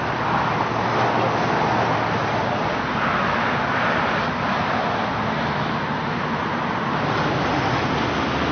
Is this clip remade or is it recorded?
recorded